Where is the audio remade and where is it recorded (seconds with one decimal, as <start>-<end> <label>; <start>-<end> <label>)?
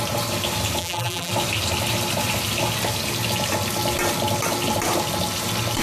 0.0-0.8 recorded; 0.8-1.3 remade; 1.3-5.8 recorded